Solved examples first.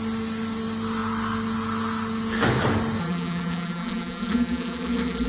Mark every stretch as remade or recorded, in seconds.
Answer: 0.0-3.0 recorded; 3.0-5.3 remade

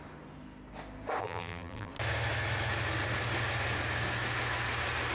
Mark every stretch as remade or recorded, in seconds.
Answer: 0.0-1.2 recorded; 1.2-1.9 remade; 1.9-5.1 recorded

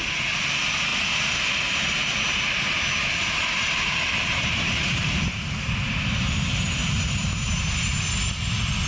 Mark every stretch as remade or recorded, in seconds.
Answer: 0.0-3.0 recorded; 3.0-7.9 remade; 7.9-8.9 recorded

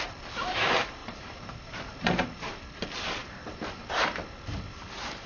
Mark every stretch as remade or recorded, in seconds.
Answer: 0.0-1.0 recorded; 1.0-2.5 remade; 2.5-3.2 recorded; 3.2-5.3 remade